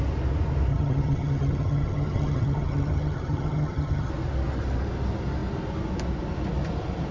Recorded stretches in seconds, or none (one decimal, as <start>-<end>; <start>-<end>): 0.0-0.7; 4.1-7.1